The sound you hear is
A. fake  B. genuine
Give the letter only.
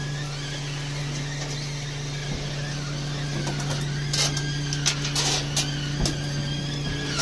B